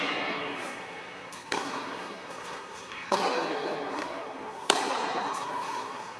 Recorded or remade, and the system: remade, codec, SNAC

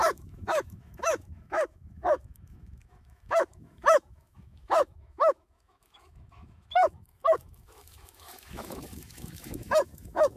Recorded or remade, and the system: remade, autoencoder, DAC-VAE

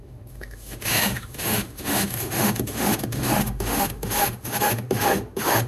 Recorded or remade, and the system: remade, autoencoder, DAC-VAE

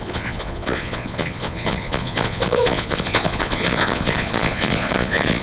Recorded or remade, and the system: remade, vocoder, Vocos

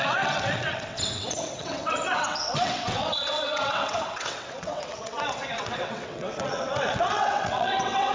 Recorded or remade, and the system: remade, vocoder, WaveNeXt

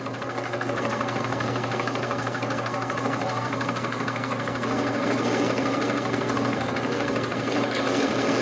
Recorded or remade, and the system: remade, codec, SNAC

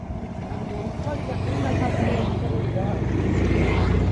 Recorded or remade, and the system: recorded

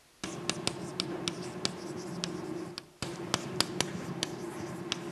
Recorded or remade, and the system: recorded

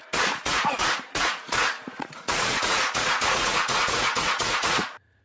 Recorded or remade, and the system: remade, vocoder, Vocos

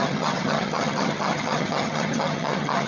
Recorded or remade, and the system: remade, vocoder, HiFi-GAN